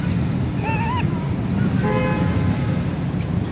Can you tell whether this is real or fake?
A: real